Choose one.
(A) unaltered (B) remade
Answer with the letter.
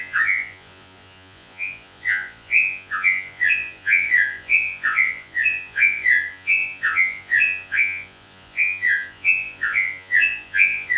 B